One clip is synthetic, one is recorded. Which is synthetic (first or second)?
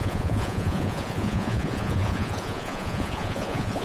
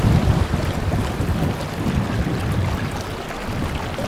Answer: first